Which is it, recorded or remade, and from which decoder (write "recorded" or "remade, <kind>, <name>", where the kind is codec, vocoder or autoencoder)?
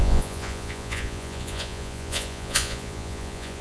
remade, vocoder, Vocos